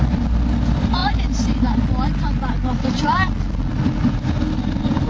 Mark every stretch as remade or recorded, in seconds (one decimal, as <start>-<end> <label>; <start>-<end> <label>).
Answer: 0.0-5.1 recorded